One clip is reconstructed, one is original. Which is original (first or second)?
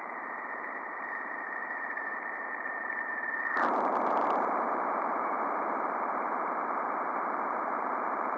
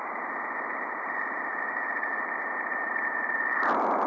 second